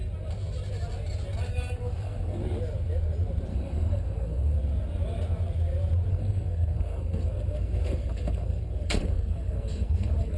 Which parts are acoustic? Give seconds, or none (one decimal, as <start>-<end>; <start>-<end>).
0.0-1.5; 2.4-3.5; 4.6-6.1